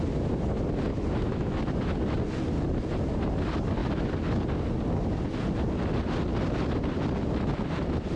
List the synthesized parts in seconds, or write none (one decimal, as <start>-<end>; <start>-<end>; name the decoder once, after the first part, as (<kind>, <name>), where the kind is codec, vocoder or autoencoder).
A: 0.9-1.6 (autoencoder, DAC-VAE)